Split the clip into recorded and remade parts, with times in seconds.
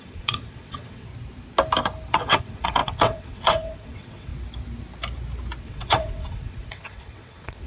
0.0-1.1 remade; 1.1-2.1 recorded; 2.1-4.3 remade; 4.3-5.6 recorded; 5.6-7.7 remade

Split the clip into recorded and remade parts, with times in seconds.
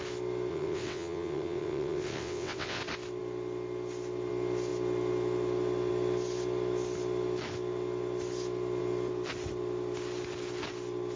0.0-0.5 recorded; 0.5-2.8 remade; 2.8-11.2 recorded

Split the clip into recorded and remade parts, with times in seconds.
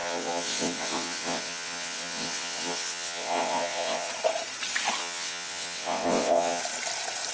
0.0-4.1 remade; 4.1-5.0 recorded; 5.0-6.6 remade; 6.6-7.3 recorded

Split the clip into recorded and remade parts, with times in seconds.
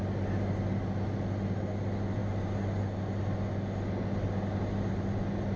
0.0-5.6 recorded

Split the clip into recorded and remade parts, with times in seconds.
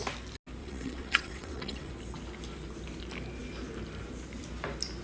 0.0-0.6 recorded; 0.6-1.9 remade; 1.9-5.0 recorded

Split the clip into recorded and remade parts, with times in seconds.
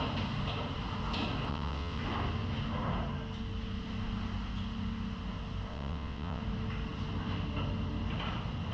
0.0-1.5 recorded; 1.5-2.0 remade; 2.0-5.7 recorded; 5.7-6.4 remade; 6.4-8.7 recorded